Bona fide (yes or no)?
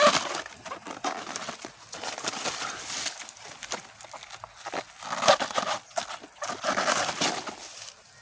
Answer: yes